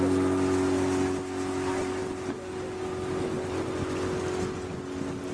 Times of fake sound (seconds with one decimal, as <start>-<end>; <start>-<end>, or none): 2.0-5.3